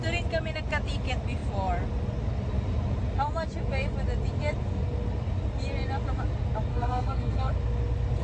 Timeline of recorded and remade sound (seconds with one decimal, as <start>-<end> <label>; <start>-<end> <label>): 0.0-6.7 recorded; 6.7-7.5 remade; 7.5-8.2 recorded